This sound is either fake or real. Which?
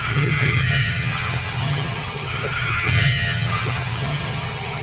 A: fake